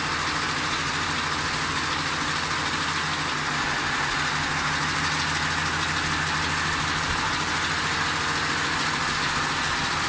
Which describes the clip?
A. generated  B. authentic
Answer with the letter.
B